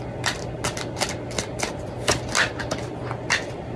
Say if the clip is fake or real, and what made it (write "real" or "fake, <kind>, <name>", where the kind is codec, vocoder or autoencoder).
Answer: real